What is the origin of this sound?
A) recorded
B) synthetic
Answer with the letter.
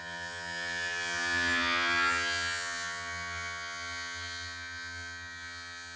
B